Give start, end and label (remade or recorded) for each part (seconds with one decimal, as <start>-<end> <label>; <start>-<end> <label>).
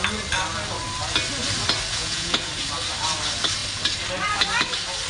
0.0-1.9 recorded; 1.9-2.5 remade; 2.5-5.1 recorded